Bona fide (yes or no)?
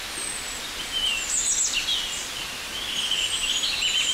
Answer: yes